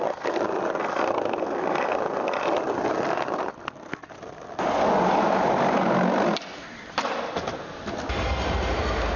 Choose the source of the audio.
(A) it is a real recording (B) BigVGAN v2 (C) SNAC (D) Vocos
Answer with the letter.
A